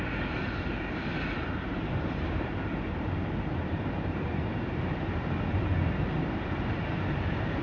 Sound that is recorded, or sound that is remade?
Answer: remade